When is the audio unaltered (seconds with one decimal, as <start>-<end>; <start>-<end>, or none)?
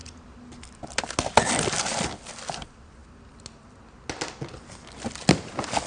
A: 0.0-5.9